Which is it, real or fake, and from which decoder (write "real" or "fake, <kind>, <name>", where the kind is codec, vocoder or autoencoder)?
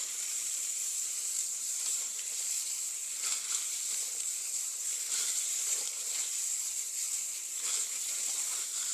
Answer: fake, vocoder, BigVGAN v2